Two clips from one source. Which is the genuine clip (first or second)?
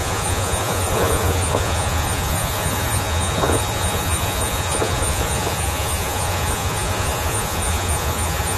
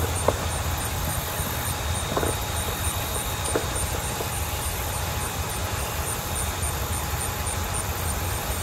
second